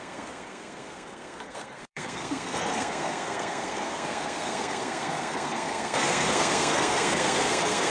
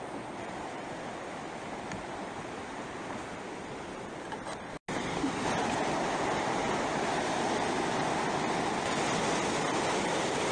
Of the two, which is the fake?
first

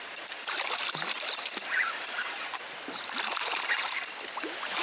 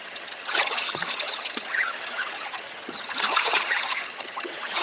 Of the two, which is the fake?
second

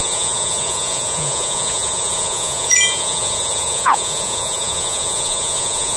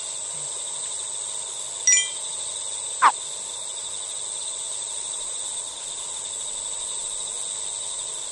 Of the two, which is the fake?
first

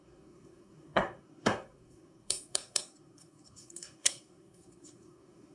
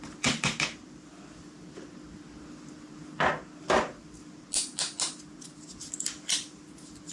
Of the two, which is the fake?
first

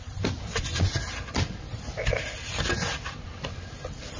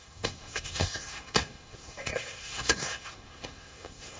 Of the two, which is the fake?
second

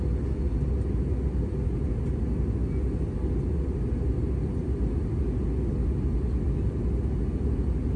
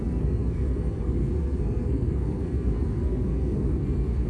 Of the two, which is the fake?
second